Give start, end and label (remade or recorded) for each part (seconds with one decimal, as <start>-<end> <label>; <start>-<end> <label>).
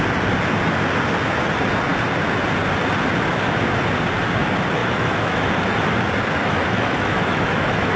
0.0-4.8 recorded; 4.8-5.5 remade; 5.5-6.4 recorded; 6.4-8.0 remade